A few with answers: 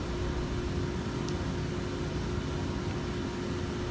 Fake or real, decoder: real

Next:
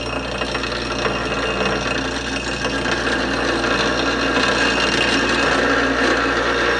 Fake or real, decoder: real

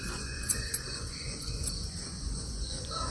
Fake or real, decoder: fake, vocoder, Vocos